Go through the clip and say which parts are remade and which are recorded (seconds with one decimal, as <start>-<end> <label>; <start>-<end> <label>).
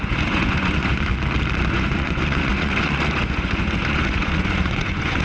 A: 0.0-1.1 remade; 1.1-1.7 recorded; 1.7-5.2 remade